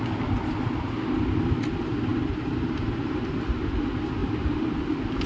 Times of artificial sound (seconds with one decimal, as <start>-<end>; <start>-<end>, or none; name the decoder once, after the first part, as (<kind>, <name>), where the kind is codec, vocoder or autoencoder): 2.1-3.8 (vocoder, BigVGAN v2); 4.2-4.8